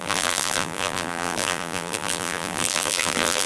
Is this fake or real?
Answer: fake